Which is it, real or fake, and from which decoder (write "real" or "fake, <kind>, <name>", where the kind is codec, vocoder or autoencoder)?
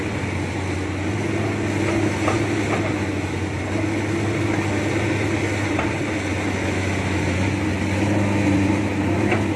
real